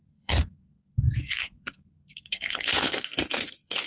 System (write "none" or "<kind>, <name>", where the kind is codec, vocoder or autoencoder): codec, SNAC